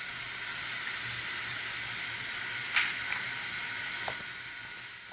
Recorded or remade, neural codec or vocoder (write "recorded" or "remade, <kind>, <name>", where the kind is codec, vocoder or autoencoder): recorded